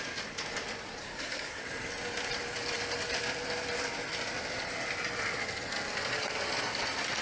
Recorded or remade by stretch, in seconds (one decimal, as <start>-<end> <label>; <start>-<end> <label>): 0.0-1.0 recorded; 1.0-1.6 remade; 1.6-7.2 recorded